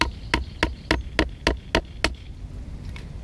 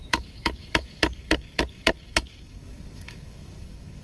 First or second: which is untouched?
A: first